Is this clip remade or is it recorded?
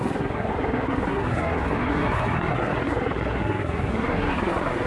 remade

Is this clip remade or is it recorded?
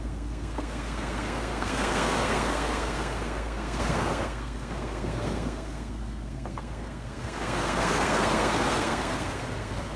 remade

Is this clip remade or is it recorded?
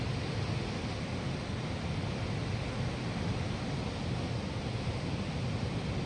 recorded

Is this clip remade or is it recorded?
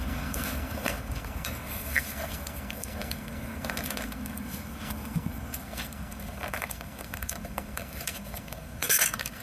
remade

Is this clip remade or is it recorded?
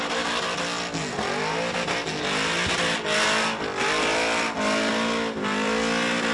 recorded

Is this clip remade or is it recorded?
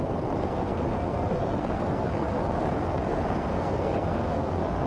remade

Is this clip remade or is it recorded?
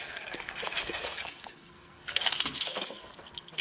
remade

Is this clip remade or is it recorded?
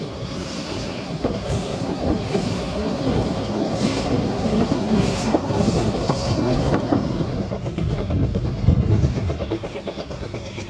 remade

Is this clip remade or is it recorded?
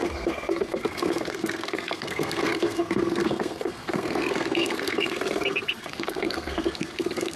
remade